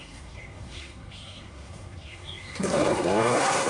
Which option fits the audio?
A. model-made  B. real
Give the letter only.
A